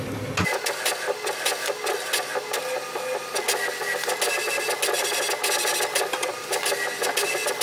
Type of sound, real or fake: real